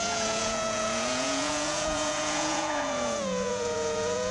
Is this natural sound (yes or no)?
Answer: no